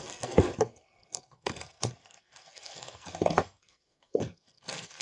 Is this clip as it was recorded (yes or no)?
no